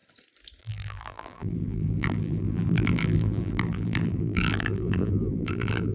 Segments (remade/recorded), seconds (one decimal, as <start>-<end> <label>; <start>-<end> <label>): 0.0-0.6 recorded; 0.6-5.9 remade